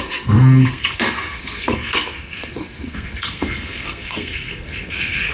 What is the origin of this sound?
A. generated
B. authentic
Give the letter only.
A